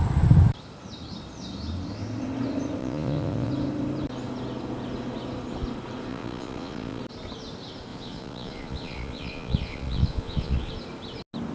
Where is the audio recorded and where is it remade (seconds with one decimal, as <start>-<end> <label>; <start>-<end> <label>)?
0.0-2.8 recorded; 2.8-3.5 remade; 3.5-6.1 recorded; 6.1-7.0 remade; 7.0-7.9 recorded; 7.9-10.7 remade; 10.7-11.5 recorded

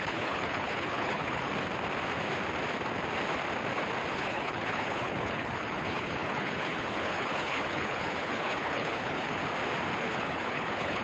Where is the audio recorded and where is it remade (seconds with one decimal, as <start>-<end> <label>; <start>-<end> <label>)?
0.0-1.5 remade; 1.5-4.1 recorded; 4.1-9.4 remade; 9.4-10.0 recorded; 10.0-11.0 remade

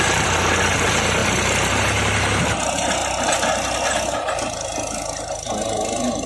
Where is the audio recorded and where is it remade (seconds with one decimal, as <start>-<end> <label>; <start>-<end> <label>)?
0.0-1.2 remade; 1.2-1.7 recorded; 1.7-3.0 remade; 3.0-6.3 recorded

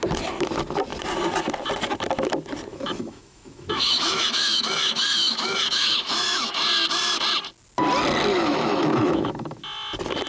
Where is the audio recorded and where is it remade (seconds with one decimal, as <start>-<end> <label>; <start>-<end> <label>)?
0.0-2.7 recorded; 2.7-6.6 remade; 6.6-8.3 recorded; 8.3-9.6 remade; 9.6-10.3 recorded

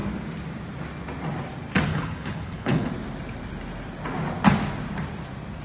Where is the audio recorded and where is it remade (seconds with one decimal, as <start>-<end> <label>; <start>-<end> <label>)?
0.0-1.9 recorded; 1.9-2.9 remade; 2.9-5.6 recorded